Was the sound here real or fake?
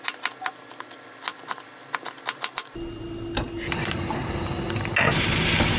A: real